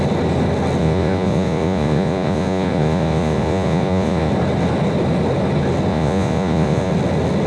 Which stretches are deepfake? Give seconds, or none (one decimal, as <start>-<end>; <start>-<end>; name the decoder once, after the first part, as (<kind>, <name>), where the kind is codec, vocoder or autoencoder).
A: 0.8-4.3 (vocoder, Vocos); 5.9-6.9